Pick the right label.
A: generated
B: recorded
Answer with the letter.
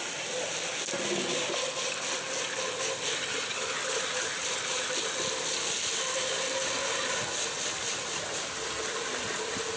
B